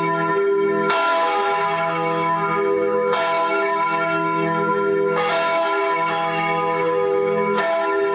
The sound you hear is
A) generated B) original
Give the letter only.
A